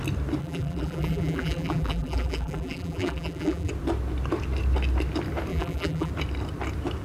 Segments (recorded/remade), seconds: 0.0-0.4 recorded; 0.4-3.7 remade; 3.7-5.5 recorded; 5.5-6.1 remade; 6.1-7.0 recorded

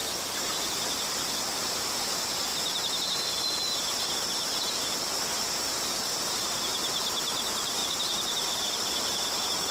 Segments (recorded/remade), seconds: 0.0-2.0 remade; 2.0-2.5 recorded; 2.5-6.6 remade; 6.6-7.8 recorded; 7.8-9.7 remade